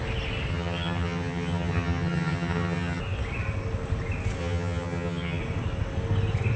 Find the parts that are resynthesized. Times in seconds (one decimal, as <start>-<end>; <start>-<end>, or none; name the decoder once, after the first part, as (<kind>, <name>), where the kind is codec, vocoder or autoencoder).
0.5-3.0 (vocoder, HiFi-GAN); 4.4-5.4